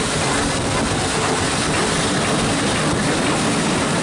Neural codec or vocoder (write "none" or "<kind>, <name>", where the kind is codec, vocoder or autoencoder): none